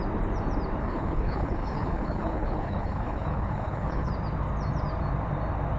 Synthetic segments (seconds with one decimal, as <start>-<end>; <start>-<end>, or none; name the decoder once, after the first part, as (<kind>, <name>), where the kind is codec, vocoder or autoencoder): 0.8-4.1 (codec, HILCodec)